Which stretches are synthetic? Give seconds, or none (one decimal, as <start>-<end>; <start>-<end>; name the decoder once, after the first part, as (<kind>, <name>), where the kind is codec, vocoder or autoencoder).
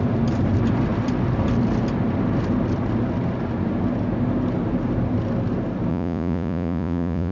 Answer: 5.9-7.3 (vocoder, Vocos)